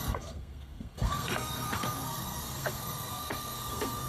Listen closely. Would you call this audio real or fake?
fake